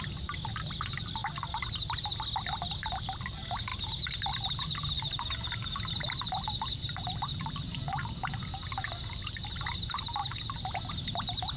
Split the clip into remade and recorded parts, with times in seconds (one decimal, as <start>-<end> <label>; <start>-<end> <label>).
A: 0.0-7.3 recorded; 7.3-8.0 remade; 8.0-11.6 recorded